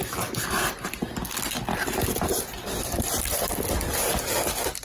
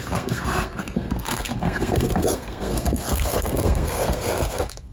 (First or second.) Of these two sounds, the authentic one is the first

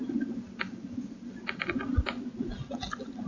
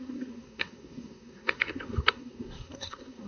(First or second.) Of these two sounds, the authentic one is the first